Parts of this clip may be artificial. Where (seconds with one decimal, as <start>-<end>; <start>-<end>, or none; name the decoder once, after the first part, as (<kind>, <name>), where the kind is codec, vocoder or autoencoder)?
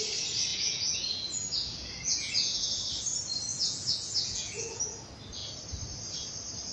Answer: 0.5-2.8 (vocoder, Vocos); 3.5-4.8